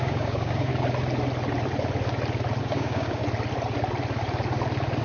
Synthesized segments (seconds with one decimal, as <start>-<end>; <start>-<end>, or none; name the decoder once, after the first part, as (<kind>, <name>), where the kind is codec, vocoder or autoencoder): 0.0-0.7 (codec, DAC); 2.6-3.2